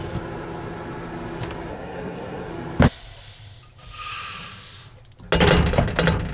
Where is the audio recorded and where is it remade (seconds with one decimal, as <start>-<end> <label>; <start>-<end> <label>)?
0.0-1.7 recorded; 1.7-2.5 remade; 2.5-6.3 recorded